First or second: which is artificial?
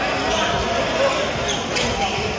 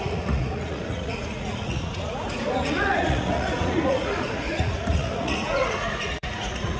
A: second